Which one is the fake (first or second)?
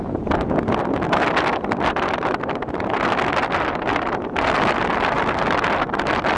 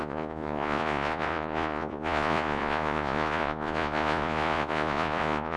second